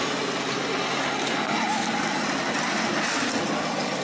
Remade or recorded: recorded